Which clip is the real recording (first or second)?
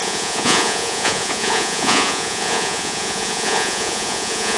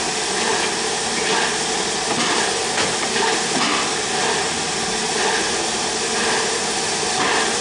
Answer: second